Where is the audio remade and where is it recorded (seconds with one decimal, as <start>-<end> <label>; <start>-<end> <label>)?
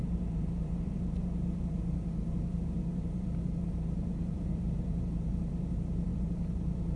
0.0-7.0 remade